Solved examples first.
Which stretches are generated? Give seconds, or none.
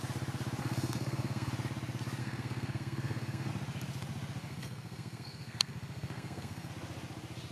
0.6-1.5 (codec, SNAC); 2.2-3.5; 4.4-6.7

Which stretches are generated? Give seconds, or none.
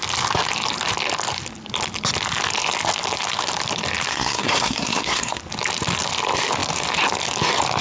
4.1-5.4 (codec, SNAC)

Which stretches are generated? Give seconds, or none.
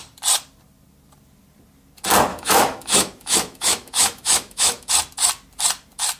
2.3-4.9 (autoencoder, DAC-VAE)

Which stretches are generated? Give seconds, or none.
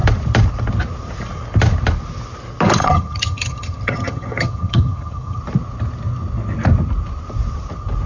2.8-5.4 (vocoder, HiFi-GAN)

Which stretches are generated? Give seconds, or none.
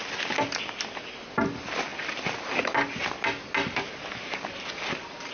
none